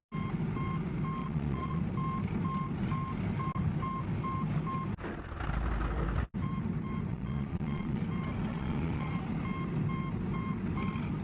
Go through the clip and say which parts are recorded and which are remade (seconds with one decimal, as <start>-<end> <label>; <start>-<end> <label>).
0.0-1.2 recorded; 1.2-1.8 remade; 1.8-7.1 recorded; 7.1-8.0 remade; 8.0-8.5 recorded; 8.5-9.1 remade; 9.1-11.2 recorded